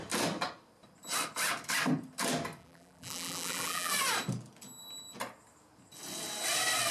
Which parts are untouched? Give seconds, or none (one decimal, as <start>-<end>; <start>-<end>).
0.0-2.6; 3.9-6.9